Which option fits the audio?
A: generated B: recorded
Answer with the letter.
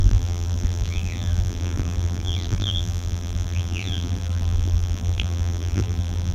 A